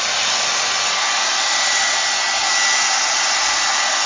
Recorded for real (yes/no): yes